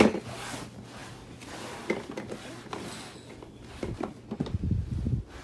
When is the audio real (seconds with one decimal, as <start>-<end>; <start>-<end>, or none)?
0.0-5.4